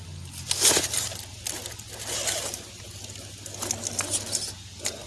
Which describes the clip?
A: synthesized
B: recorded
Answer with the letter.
B